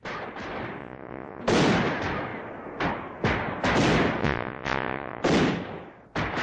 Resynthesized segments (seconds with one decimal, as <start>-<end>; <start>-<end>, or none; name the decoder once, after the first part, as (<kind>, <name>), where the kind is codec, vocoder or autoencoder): 0.8-1.4 (vocoder, Vocos); 4.2-5.2